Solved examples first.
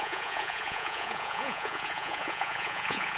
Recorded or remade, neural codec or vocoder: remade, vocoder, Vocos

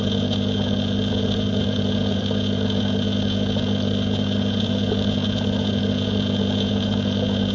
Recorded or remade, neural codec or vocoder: remade, vocoder, Vocos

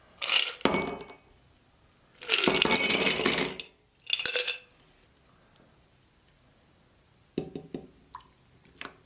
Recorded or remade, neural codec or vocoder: recorded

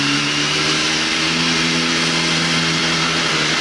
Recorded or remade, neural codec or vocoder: recorded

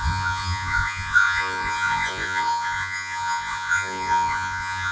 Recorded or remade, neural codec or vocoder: remade, vocoder, Vocos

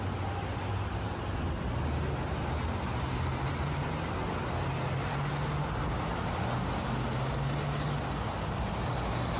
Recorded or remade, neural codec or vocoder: recorded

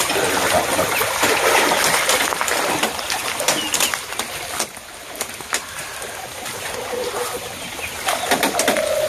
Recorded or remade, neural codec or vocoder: recorded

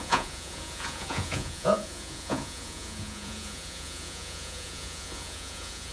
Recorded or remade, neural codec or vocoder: remade, vocoder, Vocos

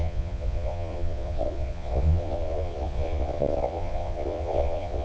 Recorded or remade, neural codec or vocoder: remade, vocoder, Vocos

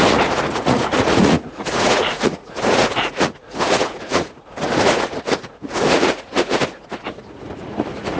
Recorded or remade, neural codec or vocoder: remade, vocoder, Vocos